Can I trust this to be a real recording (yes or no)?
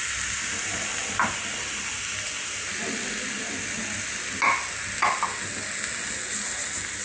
yes